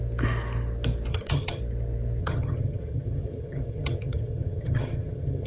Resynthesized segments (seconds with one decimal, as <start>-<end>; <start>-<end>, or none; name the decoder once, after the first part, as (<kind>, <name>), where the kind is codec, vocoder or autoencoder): 1.1-1.6 (vocoder, HiFi-GAN); 2.2-5.5